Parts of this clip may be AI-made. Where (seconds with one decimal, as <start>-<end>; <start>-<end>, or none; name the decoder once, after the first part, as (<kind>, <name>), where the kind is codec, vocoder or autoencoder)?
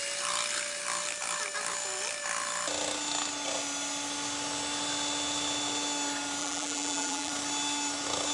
6.4-7.3 (vocoder, BigVGAN v2)